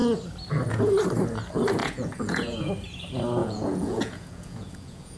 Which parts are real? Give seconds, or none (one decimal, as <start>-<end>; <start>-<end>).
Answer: 0.0-1.8; 2.7-3.4